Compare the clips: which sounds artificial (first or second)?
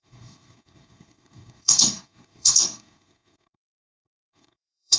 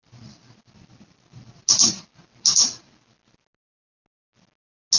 first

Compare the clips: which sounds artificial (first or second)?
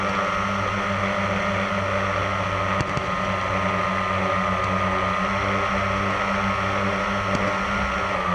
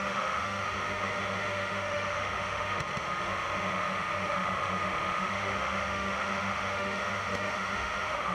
second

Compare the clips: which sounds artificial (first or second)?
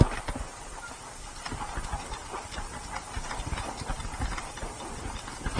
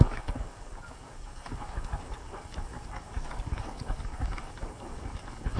second